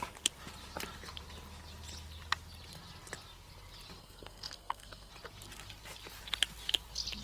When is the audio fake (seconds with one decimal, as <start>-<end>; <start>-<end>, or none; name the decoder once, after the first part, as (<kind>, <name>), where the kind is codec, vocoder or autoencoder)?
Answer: 4.0-5.1 (codec, SNAC)